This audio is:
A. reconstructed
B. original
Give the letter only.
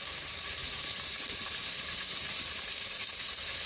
A